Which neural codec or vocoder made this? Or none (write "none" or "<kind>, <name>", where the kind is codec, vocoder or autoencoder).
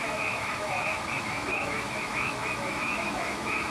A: autoencoder, DAC-VAE